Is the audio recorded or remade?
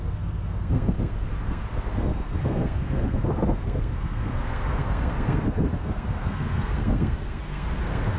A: remade